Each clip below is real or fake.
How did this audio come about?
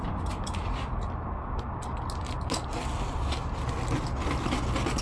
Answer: real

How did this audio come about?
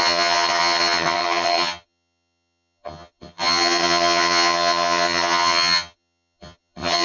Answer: fake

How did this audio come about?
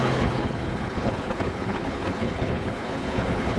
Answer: fake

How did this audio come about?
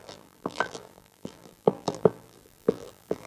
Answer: fake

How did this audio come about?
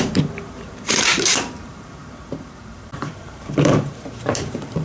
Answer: fake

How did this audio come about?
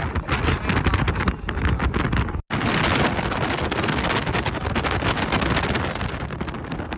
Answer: real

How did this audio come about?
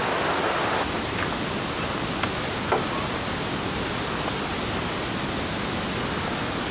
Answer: real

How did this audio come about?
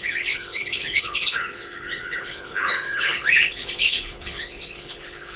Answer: fake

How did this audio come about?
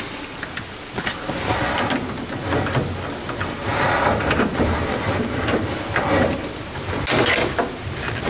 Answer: real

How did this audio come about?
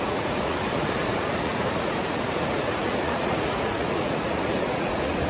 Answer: fake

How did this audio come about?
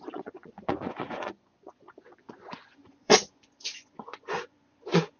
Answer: fake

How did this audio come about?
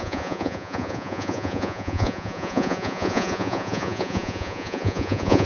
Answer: fake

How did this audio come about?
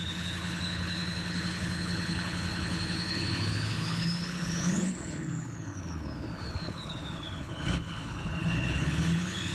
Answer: fake